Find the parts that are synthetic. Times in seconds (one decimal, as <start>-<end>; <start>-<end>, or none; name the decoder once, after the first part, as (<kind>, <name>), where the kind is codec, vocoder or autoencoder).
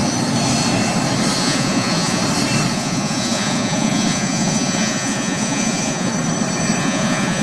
1.4-2.2 (vocoder, Vocos); 2.7-6.1; 6.8-7.4